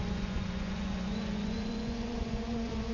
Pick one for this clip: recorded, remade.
remade